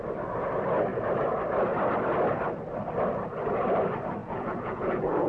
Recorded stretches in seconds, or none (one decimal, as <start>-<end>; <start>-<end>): 0.0-4.2